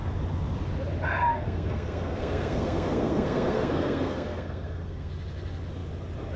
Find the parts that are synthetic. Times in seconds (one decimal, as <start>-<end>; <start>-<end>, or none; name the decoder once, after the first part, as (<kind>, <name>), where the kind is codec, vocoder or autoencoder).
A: 1.3-5.1 (codec, SNAC)